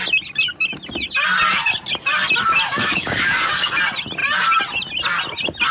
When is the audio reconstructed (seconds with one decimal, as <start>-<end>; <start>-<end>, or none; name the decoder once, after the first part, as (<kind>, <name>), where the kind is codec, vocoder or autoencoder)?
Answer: 2.7-3.8 (codec, DAC)